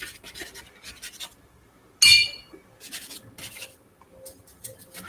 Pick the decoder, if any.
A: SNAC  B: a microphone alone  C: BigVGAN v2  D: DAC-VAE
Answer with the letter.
B